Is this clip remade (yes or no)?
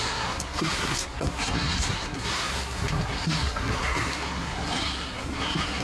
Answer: yes